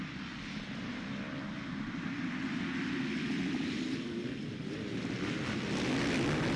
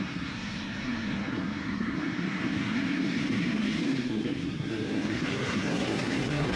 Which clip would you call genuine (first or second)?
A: first